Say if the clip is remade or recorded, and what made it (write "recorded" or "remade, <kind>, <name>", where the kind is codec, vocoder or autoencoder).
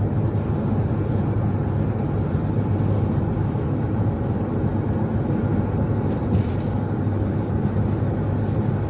recorded